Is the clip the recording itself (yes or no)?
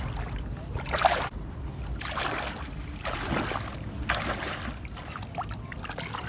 yes